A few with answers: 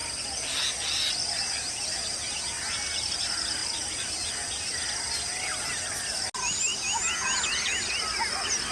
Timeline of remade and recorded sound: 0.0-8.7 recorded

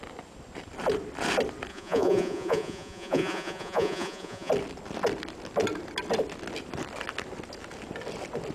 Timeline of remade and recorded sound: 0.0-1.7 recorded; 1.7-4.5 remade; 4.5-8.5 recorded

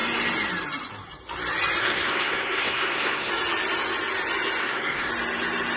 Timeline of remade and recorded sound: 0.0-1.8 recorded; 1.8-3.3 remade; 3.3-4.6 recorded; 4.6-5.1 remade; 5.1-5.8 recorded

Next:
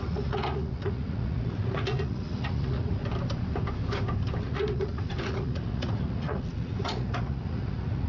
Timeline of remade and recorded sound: 0.0-3.0 remade; 3.0-4.4 recorded; 4.4-8.1 remade

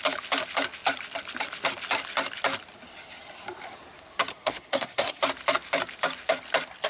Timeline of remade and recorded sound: 0.0-4.3 recorded; 4.3-5.2 remade; 5.2-6.9 recorded

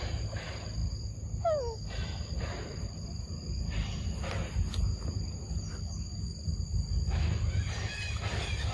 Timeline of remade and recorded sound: 0.0-8.7 recorded